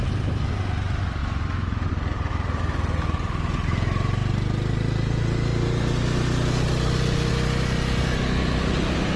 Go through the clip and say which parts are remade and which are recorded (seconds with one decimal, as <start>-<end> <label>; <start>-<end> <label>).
0.0-1.2 recorded; 1.2-1.9 remade; 1.9-9.2 recorded